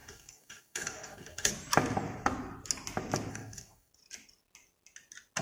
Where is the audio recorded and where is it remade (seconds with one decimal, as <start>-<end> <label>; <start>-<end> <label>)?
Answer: 0.0-1.5 remade; 1.5-3.3 recorded; 3.3-3.9 remade; 3.9-5.4 recorded